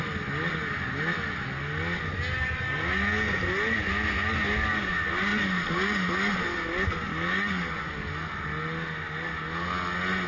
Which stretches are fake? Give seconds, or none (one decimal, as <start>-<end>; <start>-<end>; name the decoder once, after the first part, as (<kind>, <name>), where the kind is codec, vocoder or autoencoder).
none